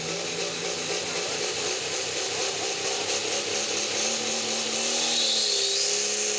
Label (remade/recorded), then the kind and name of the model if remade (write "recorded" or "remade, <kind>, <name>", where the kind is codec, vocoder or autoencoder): recorded